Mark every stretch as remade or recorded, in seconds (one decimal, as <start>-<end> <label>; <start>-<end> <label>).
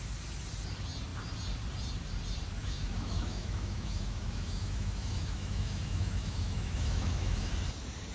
0.0-2.6 recorded; 2.6-7.5 remade; 7.5-8.1 recorded